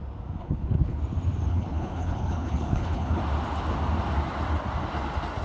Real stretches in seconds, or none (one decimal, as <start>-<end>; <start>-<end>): 0.0-0.4; 1.0-1.5; 3.2-5.4